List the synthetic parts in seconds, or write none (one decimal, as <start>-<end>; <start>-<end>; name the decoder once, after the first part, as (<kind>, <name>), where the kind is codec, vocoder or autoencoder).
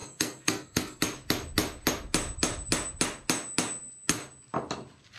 0.0-1.0 (codec, SNAC)